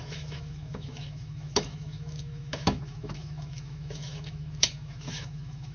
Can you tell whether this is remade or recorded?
remade